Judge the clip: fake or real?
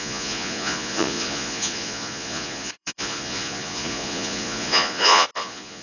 fake